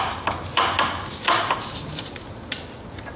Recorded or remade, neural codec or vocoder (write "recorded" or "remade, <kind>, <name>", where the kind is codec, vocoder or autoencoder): recorded